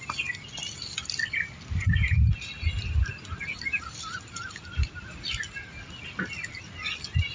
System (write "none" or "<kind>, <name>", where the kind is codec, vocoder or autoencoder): none